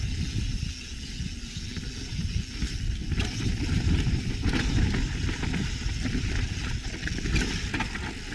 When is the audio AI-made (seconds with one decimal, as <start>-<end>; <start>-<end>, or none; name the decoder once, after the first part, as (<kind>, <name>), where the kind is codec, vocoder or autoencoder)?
none